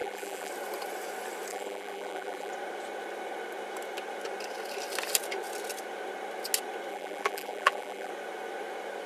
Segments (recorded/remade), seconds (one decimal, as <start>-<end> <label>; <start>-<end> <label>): 0.0-0.5 remade; 0.5-1.5 recorded; 1.5-2.5 remade; 2.5-6.9 recorded; 6.9-8.1 remade; 8.1-9.1 recorded